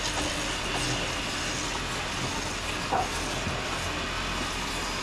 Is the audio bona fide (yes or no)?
yes